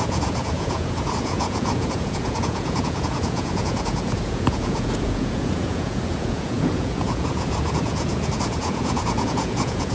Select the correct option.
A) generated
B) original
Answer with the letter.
A